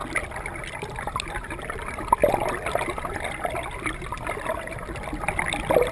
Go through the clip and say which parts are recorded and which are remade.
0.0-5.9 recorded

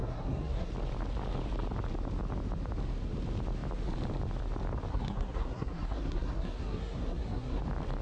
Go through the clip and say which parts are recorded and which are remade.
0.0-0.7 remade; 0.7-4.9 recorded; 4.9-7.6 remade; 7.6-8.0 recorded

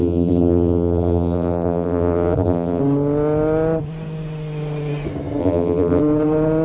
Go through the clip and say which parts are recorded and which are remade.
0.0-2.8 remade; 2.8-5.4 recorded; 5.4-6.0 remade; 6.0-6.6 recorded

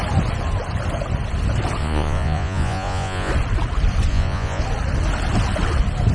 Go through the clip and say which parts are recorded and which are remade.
0.0-1.8 recorded; 1.8-3.3 remade; 3.3-4.1 recorded; 4.1-4.6 remade; 4.6-6.1 recorded

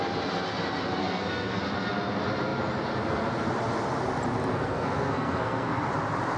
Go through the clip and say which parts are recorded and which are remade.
0.0-1.0 recorded; 1.0-1.6 remade; 1.6-4.5 recorded; 4.5-5.9 remade; 5.9-6.4 recorded

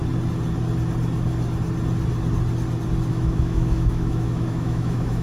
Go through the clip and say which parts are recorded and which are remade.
0.0-3.1 recorded; 3.1-5.2 remade

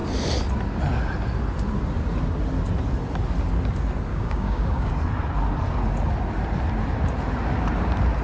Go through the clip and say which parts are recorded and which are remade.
0.0-4.1 recorded; 4.1-4.9 remade; 4.9-8.2 recorded